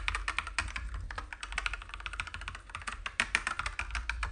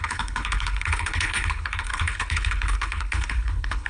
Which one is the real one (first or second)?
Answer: first